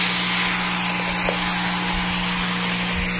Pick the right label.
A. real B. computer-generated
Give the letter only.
A